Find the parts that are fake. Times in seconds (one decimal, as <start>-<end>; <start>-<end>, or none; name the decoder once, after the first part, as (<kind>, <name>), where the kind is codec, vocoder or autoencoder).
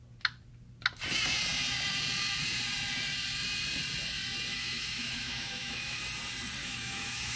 4.5-6.0 (autoencoder, DAC-VAE); 6.6-7.4